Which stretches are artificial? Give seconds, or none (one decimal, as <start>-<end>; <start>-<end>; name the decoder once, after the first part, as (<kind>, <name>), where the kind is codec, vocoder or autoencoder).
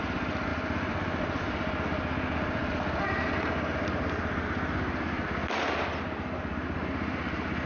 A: none